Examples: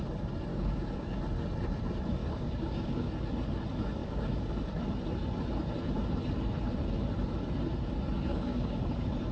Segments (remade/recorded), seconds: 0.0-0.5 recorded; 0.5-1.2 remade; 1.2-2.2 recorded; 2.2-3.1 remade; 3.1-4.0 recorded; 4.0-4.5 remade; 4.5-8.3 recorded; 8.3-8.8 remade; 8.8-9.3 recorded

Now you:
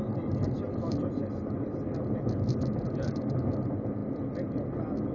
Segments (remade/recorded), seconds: 0.0-5.1 recorded

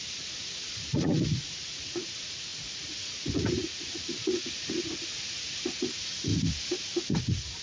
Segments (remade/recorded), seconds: 0.0-6.3 remade; 6.3-7.1 recorded; 7.1-7.6 remade

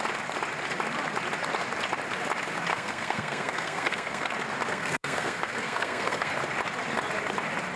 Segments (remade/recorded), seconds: 0.0-2.7 recorded; 2.7-4.3 remade; 4.3-4.7 recorded; 4.7-6.3 remade; 6.3-7.8 recorded

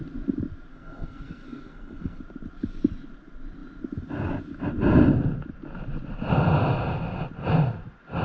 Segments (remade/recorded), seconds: 0.0-0.7 recorded; 0.7-2.2 remade; 2.2-8.2 recorded

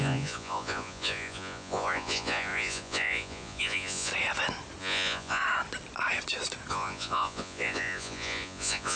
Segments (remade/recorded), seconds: 0.0-4.1 remade; 4.1-4.8 recorded; 4.8-5.4 remade; 5.4-6.7 recorded; 6.7-9.0 remade